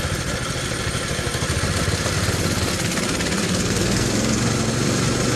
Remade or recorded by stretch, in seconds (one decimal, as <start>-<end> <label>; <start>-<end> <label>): 0.0-3.6 recorded; 3.6-4.4 remade; 4.4-5.4 recorded